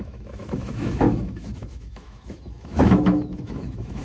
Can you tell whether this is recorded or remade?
remade